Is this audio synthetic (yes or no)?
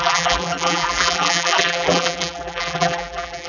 yes